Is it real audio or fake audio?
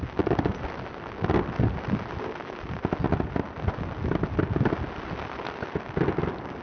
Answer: real